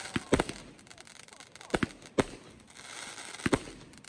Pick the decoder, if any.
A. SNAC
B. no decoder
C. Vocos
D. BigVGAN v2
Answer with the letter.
B